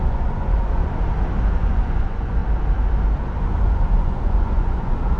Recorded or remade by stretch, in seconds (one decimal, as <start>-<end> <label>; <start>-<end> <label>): 0.0-0.8 remade; 0.8-1.5 recorded; 1.5-2.4 remade; 2.4-3.4 recorded; 3.4-5.2 remade